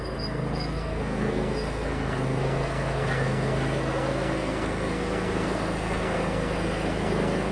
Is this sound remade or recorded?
remade